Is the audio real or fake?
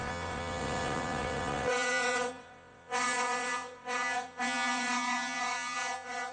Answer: fake